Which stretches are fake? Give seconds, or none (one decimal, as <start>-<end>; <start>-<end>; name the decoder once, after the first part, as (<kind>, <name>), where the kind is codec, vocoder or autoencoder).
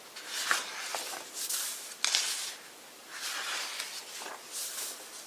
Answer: none